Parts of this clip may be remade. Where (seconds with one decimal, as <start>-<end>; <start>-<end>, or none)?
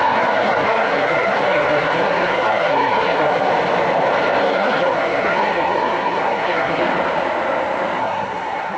0.0-3.5; 4.4-6.8; 8.0-8.8